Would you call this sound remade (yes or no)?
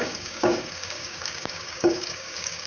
yes